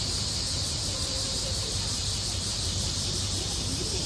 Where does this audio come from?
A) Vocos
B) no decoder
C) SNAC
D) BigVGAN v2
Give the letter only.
D